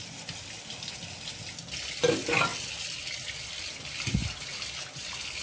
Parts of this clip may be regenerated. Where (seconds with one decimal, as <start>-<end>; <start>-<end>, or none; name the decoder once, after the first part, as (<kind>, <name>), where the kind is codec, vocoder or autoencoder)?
none